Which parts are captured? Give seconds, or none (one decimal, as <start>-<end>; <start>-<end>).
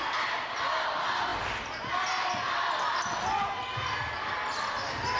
0.0-5.2